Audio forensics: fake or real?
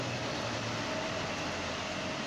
real